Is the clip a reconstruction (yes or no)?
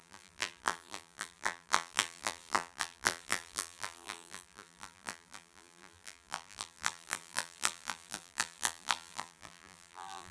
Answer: yes